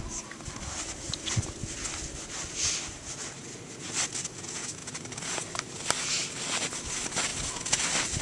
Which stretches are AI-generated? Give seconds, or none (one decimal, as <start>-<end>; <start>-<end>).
none